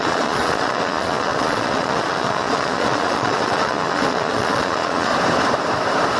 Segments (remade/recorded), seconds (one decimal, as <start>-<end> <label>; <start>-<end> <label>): 0.0-5.1 remade; 5.1-6.2 recorded